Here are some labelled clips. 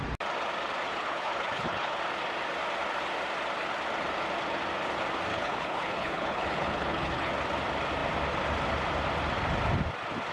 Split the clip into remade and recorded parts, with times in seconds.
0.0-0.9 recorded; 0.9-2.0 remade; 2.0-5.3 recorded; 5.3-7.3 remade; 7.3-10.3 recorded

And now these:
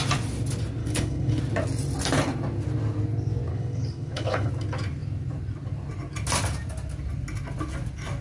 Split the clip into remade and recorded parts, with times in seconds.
0.0-0.8 recorded; 0.8-1.4 remade; 1.4-3.5 recorded; 3.5-4.5 remade; 4.5-8.2 recorded

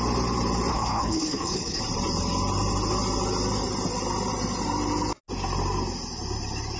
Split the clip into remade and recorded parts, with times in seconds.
0.0-0.7 recorded; 0.7-1.8 remade; 1.8-6.8 recorded

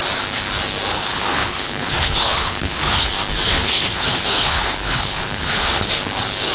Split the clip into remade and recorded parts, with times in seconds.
0.0-0.9 recorded; 0.9-3.1 remade; 3.1-3.5 recorded; 3.5-5.9 remade; 5.9-6.5 recorded

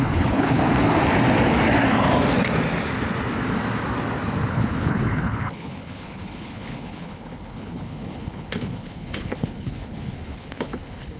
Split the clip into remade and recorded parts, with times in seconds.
0.0-0.6 remade; 0.6-4.5 recorded; 4.5-11.2 remade

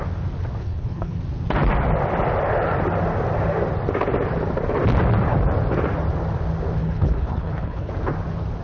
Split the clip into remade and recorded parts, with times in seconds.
0.0-0.6 recorded; 0.6-1.2 remade; 1.2-6.8 recorded; 6.8-7.9 remade; 7.9-8.6 recorded

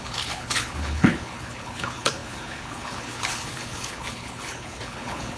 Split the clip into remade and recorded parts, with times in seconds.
0.0-5.4 remade

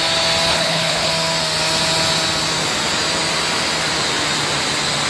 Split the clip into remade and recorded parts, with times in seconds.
0.0-0.5 recorded; 0.5-1.1 remade; 1.1-5.1 recorded